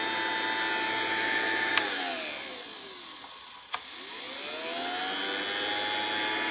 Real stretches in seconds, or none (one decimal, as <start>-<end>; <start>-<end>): 0.0-6.5